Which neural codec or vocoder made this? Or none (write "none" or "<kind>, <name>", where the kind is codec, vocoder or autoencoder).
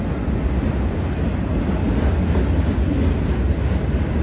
none